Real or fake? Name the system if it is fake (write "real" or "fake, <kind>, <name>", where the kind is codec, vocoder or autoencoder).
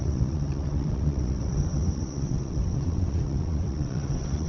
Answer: fake, vocoder, WaveNeXt